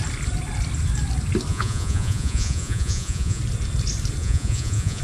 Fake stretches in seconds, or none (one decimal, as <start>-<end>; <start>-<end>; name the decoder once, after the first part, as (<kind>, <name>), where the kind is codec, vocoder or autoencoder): 1.5-3.4 (vocoder, Vocos); 4.2-5.0